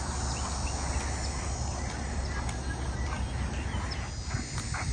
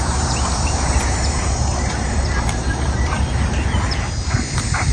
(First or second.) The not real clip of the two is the second